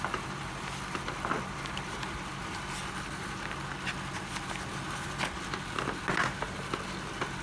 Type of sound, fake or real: real